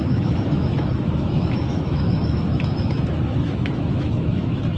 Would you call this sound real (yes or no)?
no